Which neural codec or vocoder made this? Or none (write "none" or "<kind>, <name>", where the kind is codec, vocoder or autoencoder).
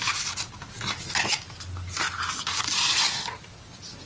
none